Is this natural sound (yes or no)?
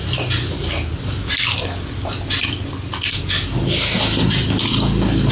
yes